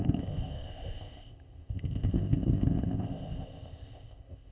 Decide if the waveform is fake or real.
fake